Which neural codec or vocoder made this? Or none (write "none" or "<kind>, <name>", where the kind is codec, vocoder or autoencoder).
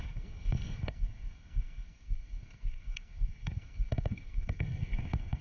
codec, SNAC